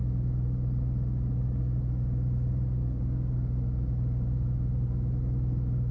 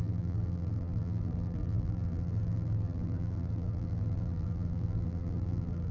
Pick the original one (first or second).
first